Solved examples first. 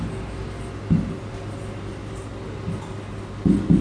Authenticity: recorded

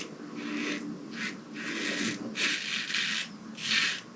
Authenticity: recorded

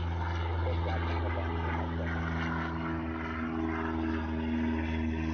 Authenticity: recorded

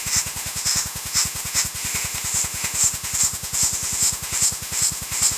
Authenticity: remade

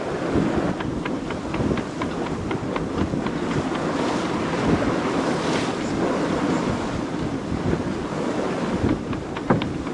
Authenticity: recorded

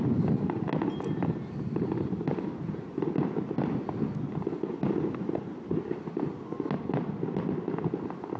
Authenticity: recorded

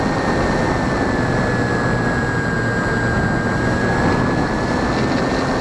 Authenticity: recorded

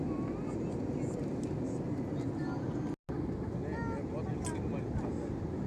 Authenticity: recorded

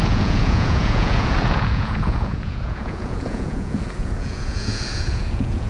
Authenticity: remade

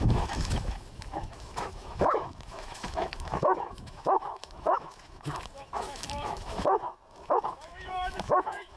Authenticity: remade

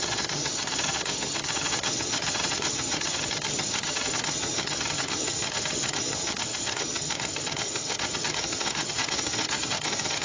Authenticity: remade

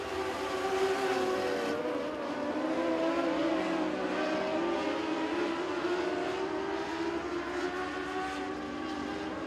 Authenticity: recorded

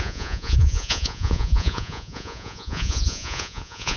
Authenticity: remade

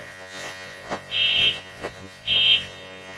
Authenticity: remade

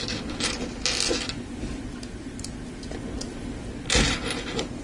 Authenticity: recorded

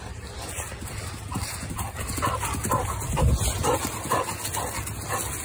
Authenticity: recorded